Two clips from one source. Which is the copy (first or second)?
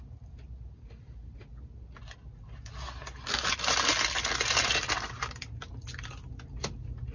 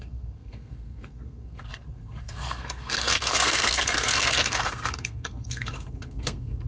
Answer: second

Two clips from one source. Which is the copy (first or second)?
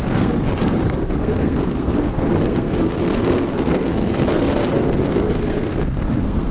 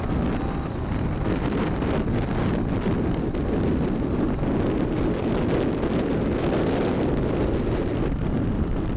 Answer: first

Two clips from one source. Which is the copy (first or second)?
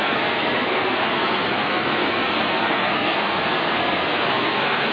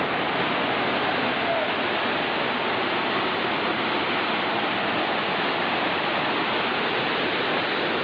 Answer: first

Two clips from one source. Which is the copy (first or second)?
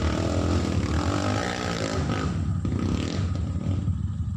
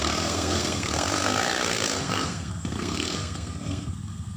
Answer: second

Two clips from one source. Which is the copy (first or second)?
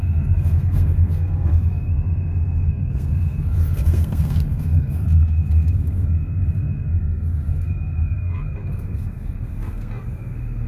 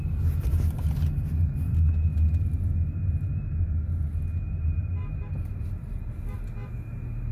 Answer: first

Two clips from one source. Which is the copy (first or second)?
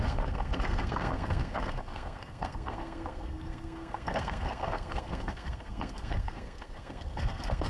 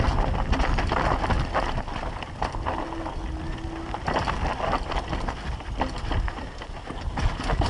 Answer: first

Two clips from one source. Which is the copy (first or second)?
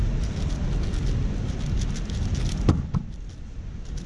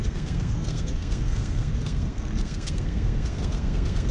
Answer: second